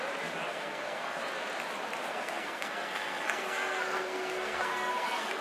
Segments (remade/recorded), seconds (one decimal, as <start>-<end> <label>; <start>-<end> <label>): 0.0-0.5 recorded; 0.5-1.2 remade; 1.2-2.1 recorded; 2.1-5.4 remade